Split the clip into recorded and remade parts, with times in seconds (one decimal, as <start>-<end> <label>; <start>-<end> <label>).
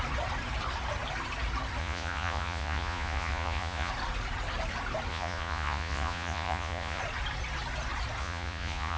0.0-1.8 recorded; 1.8-3.9 remade; 3.9-5.1 recorded; 5.1-7.0 remade; 7.0-8.2 recorded; 8.2-9.0 remade